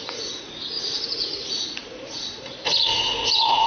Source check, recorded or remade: remade